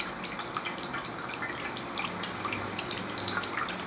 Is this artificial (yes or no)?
no